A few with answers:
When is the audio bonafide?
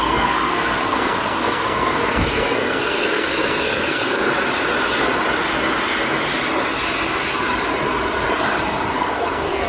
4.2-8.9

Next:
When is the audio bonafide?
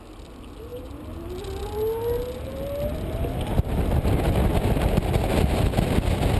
0.0-6.4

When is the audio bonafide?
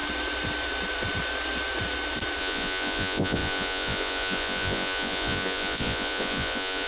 0.0-2.4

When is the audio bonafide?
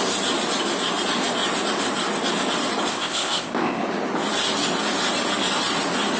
0.0-2.9; 3.8-6.2